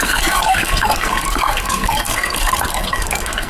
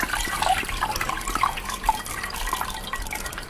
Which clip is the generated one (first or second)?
first